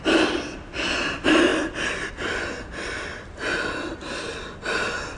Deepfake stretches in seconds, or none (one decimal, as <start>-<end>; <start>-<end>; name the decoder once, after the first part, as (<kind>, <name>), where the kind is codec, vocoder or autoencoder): none